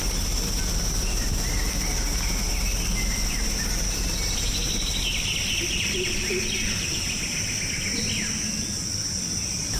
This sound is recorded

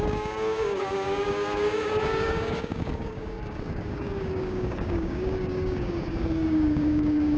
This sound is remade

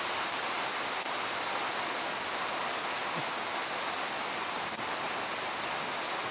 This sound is recorded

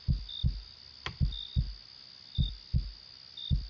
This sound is recorded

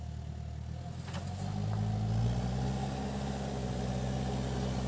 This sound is recorded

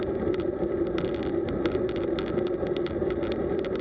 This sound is recorded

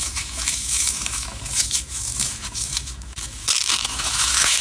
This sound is remade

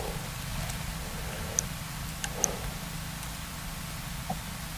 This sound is recorded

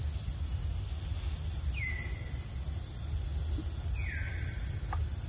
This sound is recorded